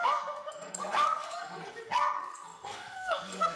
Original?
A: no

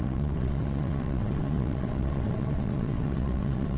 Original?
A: no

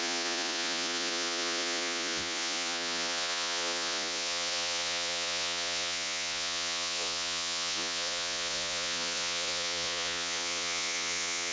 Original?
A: no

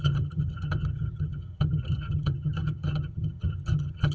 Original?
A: no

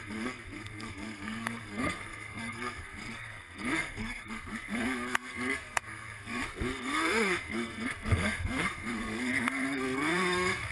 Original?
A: no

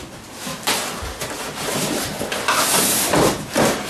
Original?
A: yes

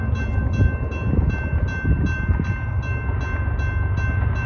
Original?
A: yes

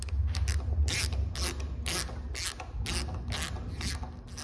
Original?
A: yes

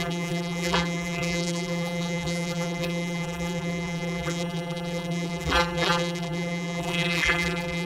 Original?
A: no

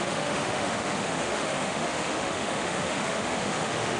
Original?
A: no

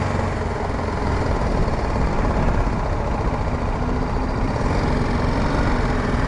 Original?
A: yes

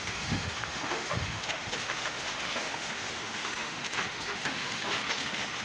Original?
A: no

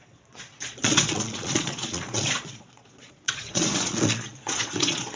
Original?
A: no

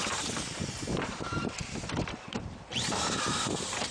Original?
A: no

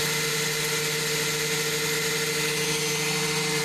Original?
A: yes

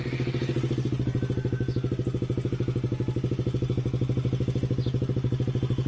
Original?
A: yes